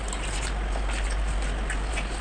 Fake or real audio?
real